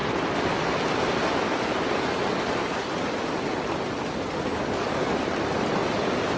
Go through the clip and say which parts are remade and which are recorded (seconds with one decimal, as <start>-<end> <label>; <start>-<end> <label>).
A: 0.0-4.5 recorded; 4.5-5.1 remade; 5.1-6.4 recorded